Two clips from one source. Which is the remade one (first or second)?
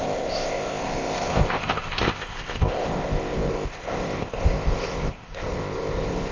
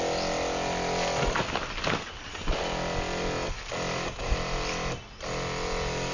first